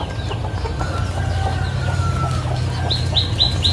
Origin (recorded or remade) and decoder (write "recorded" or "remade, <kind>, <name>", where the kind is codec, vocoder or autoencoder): recorded